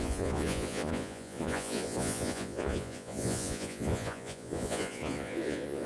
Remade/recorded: remade